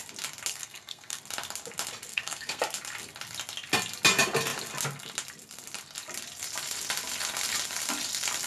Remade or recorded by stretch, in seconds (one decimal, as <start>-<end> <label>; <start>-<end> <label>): 0.0-0.5 recorded; 0.5-1.2 remade; 1.2-2.1 recorded; 2.1-2.6 remade; 2.6-8.5 recorded